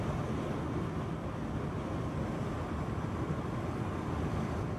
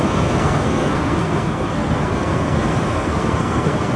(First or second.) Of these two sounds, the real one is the first